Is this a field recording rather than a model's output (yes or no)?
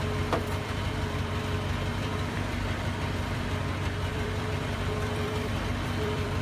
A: no